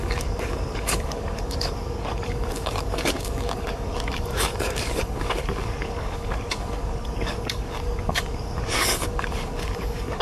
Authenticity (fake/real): fake